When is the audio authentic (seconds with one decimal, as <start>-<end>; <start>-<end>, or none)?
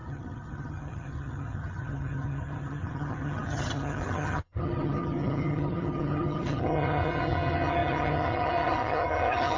none